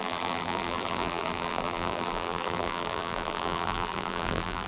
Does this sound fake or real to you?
fake